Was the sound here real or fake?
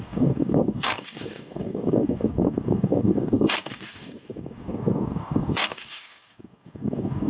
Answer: fake